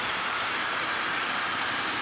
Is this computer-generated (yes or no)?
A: yes